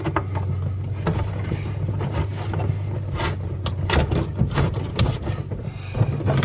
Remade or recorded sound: recorded